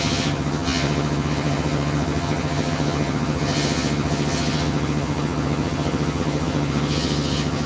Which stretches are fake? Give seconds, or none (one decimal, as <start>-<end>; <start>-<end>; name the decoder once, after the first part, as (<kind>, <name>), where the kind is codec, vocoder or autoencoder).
0.0-7.7 (vocoder, HiFi-GAN)